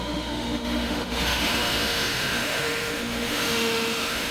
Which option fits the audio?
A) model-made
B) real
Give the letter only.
A